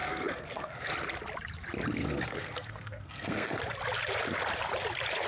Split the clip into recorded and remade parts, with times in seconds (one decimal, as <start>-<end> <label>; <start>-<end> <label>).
0.0-0.9 remade; 0.9-2.0 recorded; 2.0-3.6 remade; 3.6-5.3 recorded